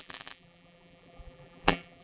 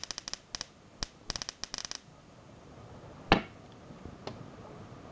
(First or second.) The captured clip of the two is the second